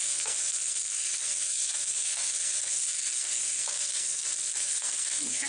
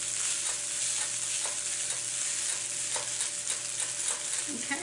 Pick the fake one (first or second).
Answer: first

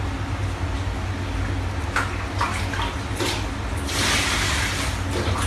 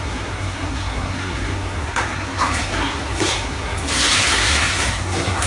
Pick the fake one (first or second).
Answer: second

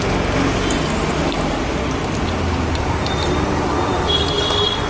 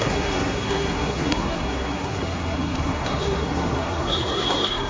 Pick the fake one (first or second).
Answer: second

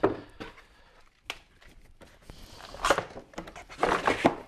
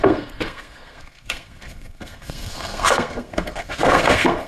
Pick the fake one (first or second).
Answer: second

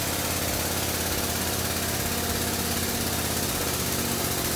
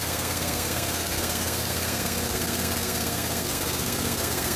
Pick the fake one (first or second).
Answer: second